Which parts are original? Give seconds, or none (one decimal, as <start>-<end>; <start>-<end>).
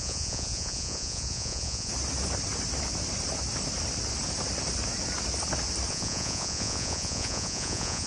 1.9-5.9